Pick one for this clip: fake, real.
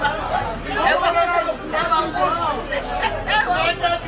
real